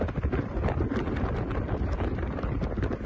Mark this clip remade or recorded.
remade